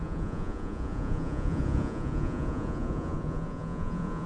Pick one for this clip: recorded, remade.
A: remade